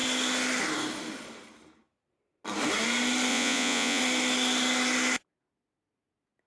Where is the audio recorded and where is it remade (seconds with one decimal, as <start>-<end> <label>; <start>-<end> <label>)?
0.0-3.3 recorded; 3.3-4.0 remade; 4.0-6.5 recorded